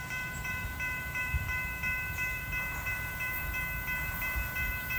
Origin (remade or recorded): remade